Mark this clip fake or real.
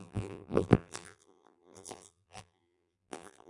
fake